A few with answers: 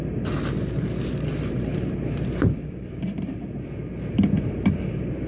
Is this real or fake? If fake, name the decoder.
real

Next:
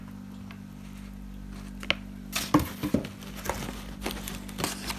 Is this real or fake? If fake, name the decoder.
real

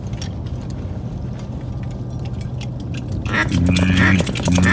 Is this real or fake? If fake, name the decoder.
real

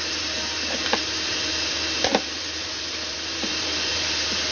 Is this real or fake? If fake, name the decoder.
fake, vocoder, BigVGAN v2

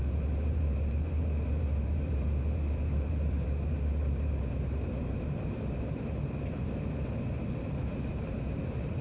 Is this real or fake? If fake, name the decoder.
fake, vocoder, BigVGAN v2